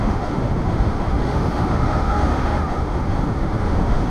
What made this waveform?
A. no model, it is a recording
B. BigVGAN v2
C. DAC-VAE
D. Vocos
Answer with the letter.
C